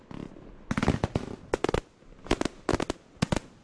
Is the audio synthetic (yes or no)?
no